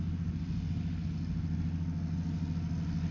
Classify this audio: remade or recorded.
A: recorded